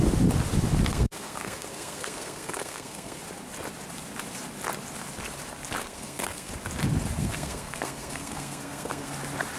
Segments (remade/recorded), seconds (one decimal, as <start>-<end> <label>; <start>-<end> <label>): 0.0-0.9 recorded; 0.9-3.2 remade; 3.2-5.8 recorded; 5.8-6.5 remade; 6.5-7.2 recorded; 7.2-9.1 remade; 9.1-9.6 recorded